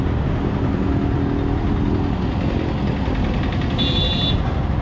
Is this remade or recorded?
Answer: recorded